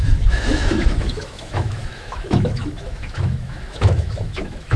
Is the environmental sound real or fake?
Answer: fake